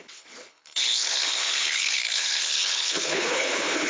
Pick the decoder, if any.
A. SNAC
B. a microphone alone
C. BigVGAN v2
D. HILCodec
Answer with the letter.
D